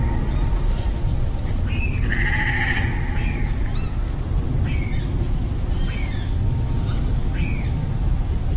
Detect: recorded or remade recorded